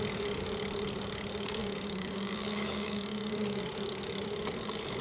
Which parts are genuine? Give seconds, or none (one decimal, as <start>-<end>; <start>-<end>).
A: 0.0-1.6; 3.6-5.0